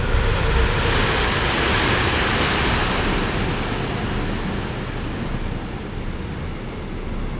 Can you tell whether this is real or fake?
real